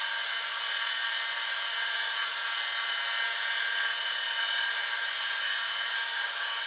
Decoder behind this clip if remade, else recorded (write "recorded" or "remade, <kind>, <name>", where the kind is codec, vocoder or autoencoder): recorded